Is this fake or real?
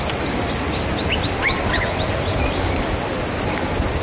real